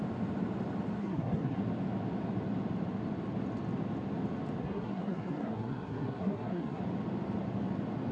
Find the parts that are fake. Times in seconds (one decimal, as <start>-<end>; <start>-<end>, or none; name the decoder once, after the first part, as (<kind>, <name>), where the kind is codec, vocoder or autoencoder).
1.0-1.6 (codec, SNAC); 4.6-6.8